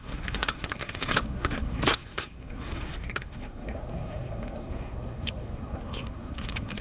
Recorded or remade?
remade